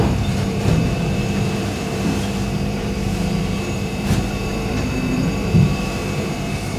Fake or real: fake